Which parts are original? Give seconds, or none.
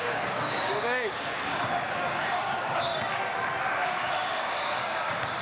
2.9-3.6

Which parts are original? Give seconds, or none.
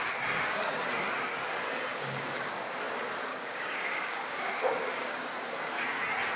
0.0-1.9; 2.8-3.3; 5.3-6.4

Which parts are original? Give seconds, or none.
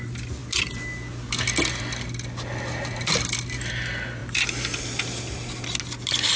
0.0-6.4